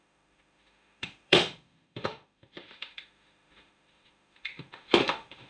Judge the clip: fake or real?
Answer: fake